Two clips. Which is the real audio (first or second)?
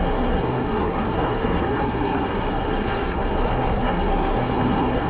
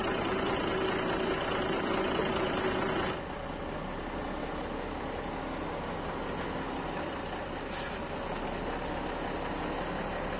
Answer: second